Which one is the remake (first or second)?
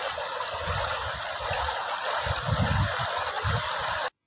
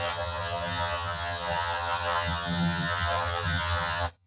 second